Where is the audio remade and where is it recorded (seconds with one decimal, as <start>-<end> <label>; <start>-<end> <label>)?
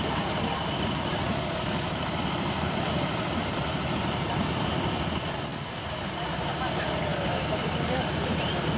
0.0-8.8 remade